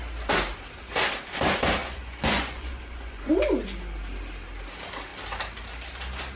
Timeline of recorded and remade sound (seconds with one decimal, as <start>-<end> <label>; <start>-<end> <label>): 0.0-1.8 recorded; 1.8-3.4 remade; 3.4-6.4 recorded